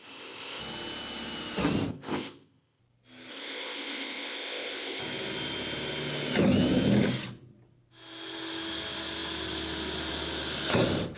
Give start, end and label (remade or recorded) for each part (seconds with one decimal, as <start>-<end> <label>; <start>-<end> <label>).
0.0-0.6 remade; 0.6-1.9 recorded; 1.9-2.8 remade; 2.8-3.3 recorded; 3.3-5.0 remade; 5.0-11.2 recorded